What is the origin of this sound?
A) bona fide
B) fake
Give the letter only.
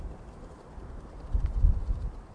B